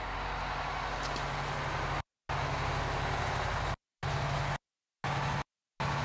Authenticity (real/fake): real